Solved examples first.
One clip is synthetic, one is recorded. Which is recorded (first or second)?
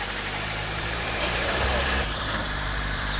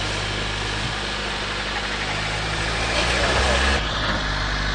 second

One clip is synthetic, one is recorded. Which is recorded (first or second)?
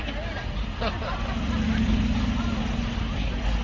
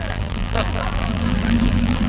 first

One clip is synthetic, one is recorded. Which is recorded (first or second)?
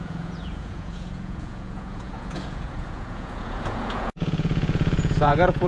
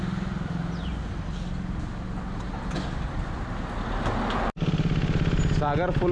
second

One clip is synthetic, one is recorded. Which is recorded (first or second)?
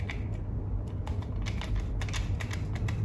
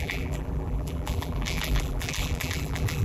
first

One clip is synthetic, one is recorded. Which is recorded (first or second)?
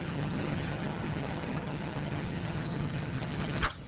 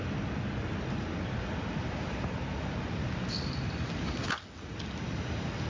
second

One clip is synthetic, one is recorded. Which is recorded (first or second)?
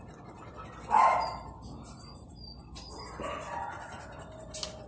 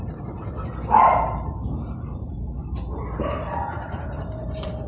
first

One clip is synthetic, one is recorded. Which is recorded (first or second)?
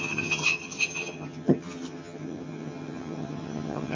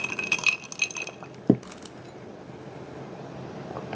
second